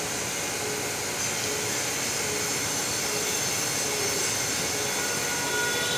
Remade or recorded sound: recorded